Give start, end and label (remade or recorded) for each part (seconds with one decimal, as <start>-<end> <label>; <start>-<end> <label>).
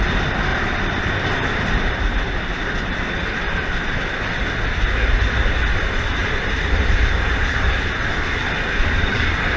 0.0-0.5 recorded; 0.5-2.0 remade; 2.0-6.2 recorded; 6.2-8.0 remade; 8.0-8.4 recorded; 8.4-9.2 remade; 9.2-9.6 recorded